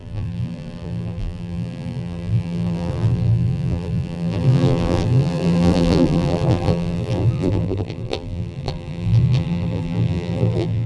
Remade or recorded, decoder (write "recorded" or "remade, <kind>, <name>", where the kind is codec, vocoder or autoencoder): remade, vocoder, BigVGAN v2